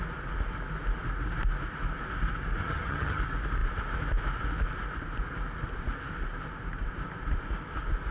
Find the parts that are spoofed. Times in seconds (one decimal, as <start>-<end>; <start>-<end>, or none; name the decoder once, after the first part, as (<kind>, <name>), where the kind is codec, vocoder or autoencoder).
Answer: 2.6-3.2 (vocoder, HiFi-GAN)